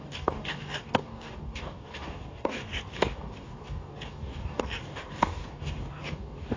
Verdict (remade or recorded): remade